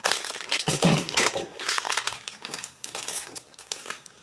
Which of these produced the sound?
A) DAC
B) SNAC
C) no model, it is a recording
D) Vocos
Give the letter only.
B